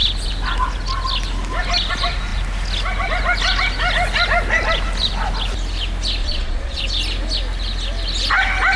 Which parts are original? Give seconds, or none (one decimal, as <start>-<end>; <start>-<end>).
0.0-6.2; 6.8-8.8